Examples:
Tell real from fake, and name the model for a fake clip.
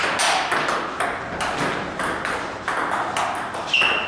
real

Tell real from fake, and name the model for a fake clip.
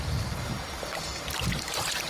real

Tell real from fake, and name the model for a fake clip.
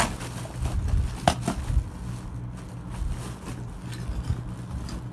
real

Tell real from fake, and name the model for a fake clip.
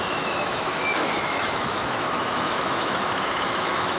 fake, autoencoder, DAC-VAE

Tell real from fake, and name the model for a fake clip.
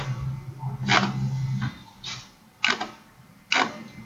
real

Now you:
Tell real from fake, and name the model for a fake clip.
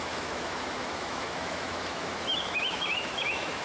fake, autoencoder, DAC-VAE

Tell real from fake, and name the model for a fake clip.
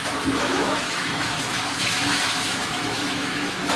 fake, autoencoder, DAC-VAE